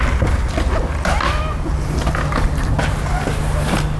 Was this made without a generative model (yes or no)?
yes